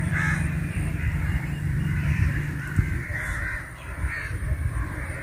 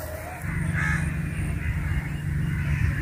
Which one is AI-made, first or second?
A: first